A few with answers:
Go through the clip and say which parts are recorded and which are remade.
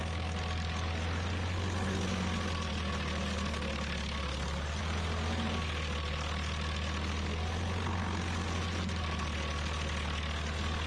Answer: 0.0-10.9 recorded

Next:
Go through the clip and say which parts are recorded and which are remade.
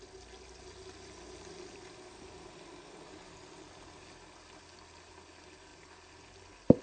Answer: 0.0-6.8 recorded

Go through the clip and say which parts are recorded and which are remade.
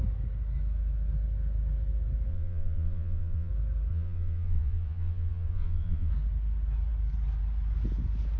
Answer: 0.0-2.3 recorded; 2.3-3.5 remade; 3.5-3.9 recorded; 3.9-6.1 remade; 6.1-8.4 recorded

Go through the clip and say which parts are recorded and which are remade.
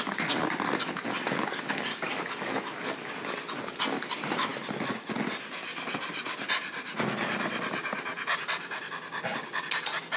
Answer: 0.0-1.9 recorded; 1.9-3.1 remade; 3.1-10.2 recorded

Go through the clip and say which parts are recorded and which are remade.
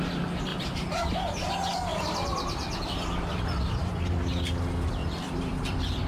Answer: 0.0-0.5 recorded; 0.5-1.5 remade; 1.5-1.9 recorded; 1.9-4.2 remade; 4.2-5.0 recorded; 5.0-6.1 remade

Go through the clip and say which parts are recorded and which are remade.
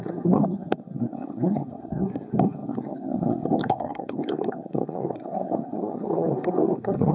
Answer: 0.0-7.1 remade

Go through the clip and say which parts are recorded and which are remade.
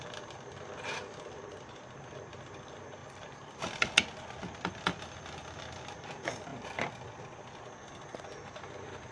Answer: 0.0-3.0 recorded; 3.0-3.9 remade; 3.9-6.5 recorded; 6.5-7.2 remade; 7.2-9.1 recorded